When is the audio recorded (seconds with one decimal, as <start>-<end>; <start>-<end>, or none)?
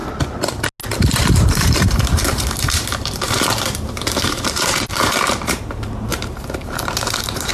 0.0-1.2; 5.6-6.1